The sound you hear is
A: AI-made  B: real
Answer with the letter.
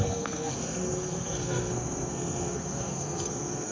A